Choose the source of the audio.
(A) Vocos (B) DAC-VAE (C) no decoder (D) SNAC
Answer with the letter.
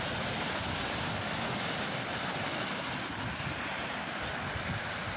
C